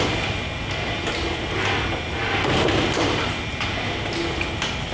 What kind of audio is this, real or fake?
real